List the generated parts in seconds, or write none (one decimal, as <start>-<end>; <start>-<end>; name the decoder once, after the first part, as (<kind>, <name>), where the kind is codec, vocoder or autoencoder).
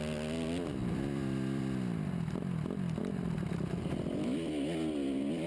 0.8-1.6 (vocoder, BigVGAN v2); 3.0-3.8